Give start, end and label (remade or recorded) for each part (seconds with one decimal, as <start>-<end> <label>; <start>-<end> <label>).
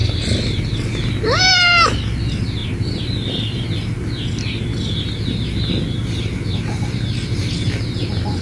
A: 0.0-8.4 recorded